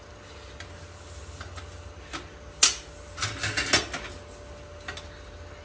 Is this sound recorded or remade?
recorded